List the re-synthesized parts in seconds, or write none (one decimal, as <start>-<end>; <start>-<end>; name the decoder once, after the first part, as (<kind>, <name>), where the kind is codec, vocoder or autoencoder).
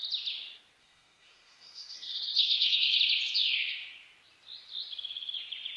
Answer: 0.8-3.0 (codec, SNAC)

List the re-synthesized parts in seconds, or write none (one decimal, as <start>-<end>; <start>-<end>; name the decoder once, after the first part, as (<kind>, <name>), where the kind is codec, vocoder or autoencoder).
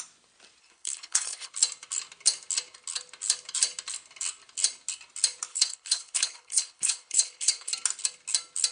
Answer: 0.6-1.5 (codec, HILCodec); 5.5-7.7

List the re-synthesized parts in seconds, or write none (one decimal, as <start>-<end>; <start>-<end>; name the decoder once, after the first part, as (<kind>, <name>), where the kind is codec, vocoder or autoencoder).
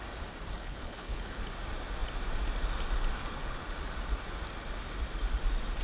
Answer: 0.6-1.4 (codec, HILCodec)